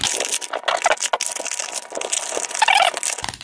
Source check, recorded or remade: recorded